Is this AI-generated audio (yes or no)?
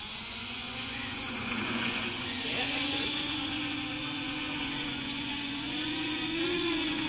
yes